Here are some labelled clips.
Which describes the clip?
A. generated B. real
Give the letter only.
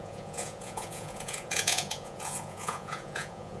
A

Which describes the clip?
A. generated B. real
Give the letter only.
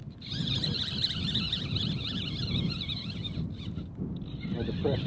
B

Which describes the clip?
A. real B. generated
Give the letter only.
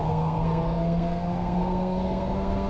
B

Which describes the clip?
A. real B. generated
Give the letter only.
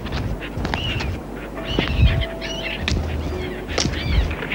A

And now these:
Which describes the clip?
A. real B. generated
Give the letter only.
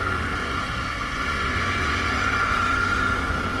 B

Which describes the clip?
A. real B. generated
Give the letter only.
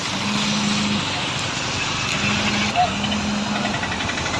A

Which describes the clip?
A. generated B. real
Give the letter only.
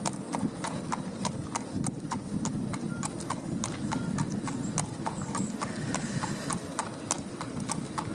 B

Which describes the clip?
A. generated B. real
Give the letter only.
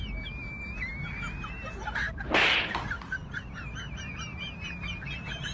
B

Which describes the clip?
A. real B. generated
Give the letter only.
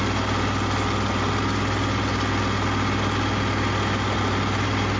A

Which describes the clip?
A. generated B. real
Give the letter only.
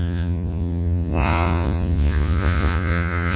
A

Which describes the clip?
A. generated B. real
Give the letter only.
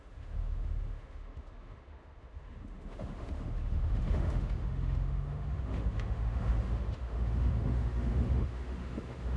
A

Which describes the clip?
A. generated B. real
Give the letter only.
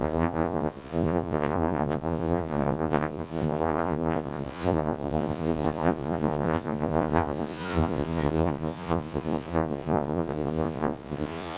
A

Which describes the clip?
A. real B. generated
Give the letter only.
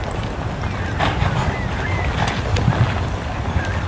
A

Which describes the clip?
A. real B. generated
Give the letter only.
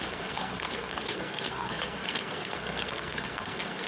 B